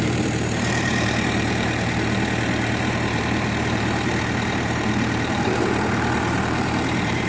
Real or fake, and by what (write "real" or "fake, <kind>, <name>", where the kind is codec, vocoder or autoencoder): fake, vocoder, BigVGAN v2